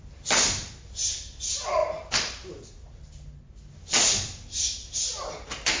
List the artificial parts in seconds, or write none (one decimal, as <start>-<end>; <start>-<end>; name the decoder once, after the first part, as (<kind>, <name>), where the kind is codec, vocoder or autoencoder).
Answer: none